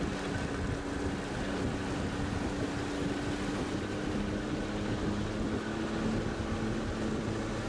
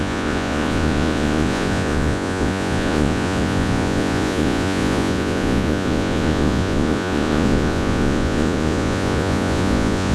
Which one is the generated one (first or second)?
second